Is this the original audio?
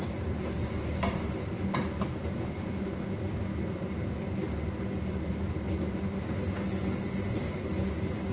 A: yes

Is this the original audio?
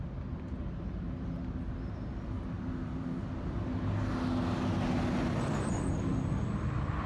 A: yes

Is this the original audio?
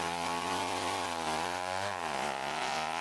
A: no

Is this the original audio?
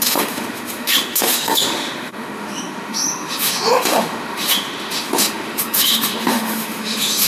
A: no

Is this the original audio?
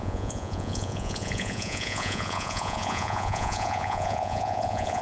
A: no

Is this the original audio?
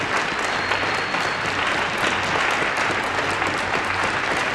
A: yes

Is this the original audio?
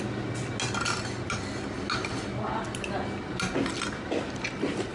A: yes